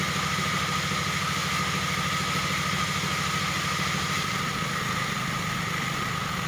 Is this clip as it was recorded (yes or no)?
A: yes